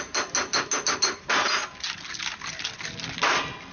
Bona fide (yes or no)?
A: yes